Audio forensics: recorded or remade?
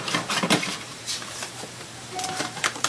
remade